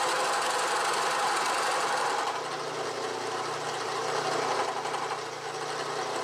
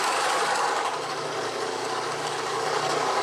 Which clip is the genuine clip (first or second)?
first